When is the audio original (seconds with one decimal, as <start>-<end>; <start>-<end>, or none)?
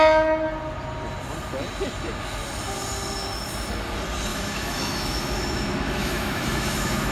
0.0-4.3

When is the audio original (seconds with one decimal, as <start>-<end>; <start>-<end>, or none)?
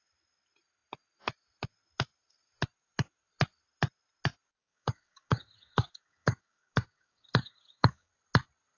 0.0-4.6; 8.1-8.8